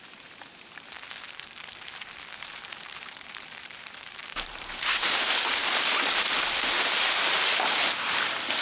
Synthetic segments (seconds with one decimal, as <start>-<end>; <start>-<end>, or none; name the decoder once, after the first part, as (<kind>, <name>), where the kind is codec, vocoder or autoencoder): 0.0-5.6 (vocoder, BigVGAN v2); 6.6-8.6